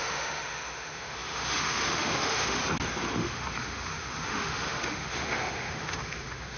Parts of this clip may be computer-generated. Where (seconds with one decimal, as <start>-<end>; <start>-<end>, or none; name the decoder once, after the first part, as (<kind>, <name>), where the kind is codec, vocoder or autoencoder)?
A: 0.0-2.6 (autoencoder, DAC-VAE); 3.1-6.6